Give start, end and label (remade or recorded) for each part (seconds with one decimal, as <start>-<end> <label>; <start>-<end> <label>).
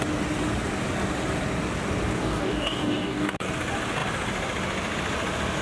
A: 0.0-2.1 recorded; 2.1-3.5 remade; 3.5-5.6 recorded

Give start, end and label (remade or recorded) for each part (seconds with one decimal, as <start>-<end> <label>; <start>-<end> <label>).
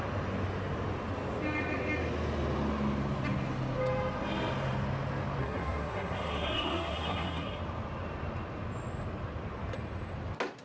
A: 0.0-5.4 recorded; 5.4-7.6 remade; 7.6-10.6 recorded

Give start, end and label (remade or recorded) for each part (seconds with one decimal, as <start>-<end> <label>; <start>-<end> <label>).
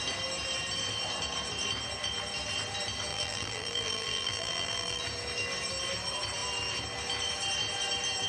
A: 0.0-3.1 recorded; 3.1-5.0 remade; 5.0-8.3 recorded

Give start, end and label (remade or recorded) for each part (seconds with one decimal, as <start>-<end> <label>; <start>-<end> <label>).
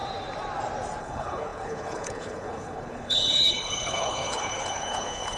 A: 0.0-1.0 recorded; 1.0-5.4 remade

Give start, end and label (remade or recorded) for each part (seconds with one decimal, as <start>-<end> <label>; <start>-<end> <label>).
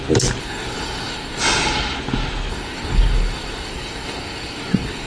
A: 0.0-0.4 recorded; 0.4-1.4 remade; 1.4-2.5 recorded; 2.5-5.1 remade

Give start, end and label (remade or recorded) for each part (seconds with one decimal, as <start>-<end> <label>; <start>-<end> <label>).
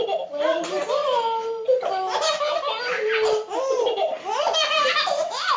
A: 0.0-5.6 recorded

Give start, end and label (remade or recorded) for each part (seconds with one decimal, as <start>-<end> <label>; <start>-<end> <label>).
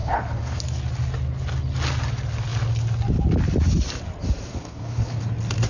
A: 0.0-0.6 remade; 0.6-4.5 recorded; 4.5-5.2 remade; 5.2-5.7 recorded